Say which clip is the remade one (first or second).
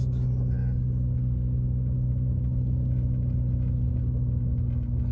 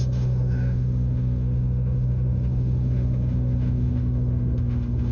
second